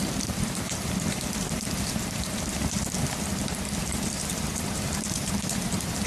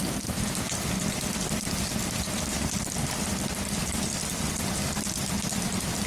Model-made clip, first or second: first